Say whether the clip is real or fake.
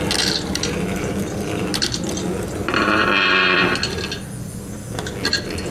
real